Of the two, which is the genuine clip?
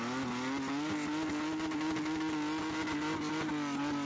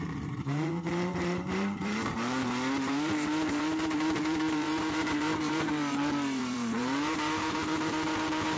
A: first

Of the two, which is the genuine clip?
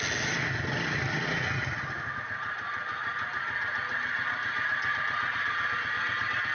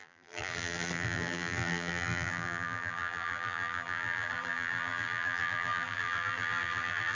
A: first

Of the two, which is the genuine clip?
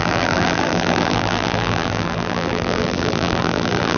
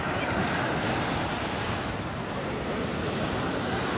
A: second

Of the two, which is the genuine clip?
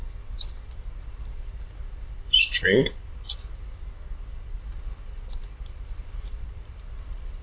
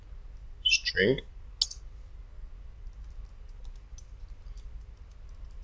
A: second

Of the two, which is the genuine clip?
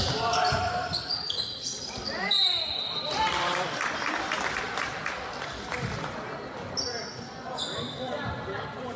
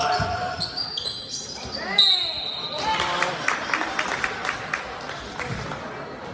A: second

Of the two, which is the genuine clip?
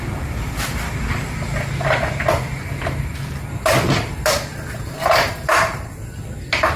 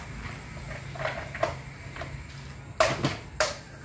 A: second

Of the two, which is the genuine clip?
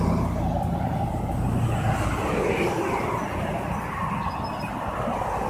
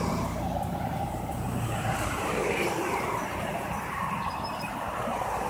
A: first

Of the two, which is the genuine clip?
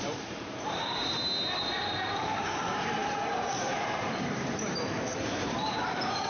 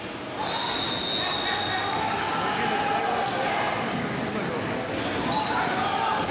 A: second